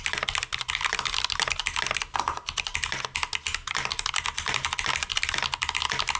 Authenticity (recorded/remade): recorded